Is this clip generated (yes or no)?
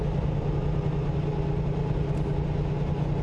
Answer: no